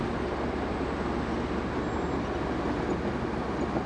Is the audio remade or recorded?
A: recorded